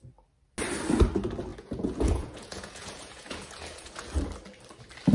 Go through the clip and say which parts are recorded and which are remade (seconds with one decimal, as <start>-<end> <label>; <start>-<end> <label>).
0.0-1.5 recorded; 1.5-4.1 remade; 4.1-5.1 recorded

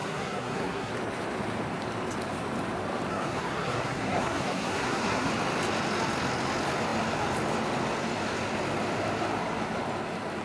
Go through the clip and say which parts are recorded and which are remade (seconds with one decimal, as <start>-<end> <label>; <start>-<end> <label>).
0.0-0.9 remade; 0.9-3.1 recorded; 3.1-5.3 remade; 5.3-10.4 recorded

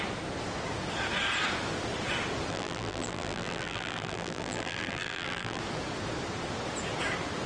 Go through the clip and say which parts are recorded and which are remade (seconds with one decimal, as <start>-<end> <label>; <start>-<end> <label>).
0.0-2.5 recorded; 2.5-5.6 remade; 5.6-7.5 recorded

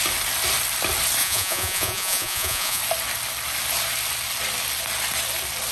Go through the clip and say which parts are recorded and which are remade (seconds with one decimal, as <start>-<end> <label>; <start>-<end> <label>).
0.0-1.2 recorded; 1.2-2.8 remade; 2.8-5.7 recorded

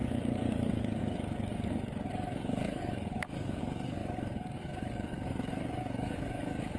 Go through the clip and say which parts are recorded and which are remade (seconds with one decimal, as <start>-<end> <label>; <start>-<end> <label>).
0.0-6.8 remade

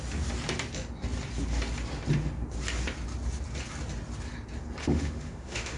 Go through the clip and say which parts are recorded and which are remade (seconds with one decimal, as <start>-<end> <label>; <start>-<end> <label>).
0.0-4.8 recorded; 4.8-5.8 remade

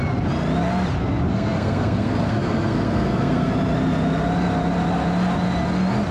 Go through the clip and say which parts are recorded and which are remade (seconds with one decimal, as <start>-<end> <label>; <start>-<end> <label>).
0.0-1.3 recorded; 1.3-3.5 remade; 3.5-6.1 recorded